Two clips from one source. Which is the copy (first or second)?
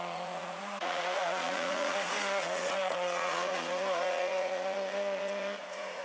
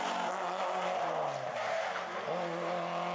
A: first